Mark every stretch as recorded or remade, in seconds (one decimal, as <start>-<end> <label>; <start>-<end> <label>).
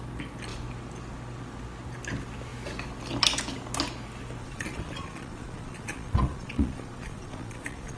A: 0.0-4.4 recorded; 4.4-8.0 remade